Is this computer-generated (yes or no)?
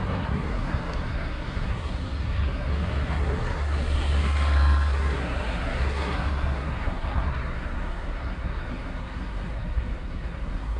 yes